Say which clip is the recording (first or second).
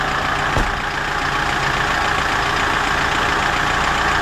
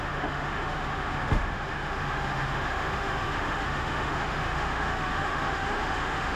first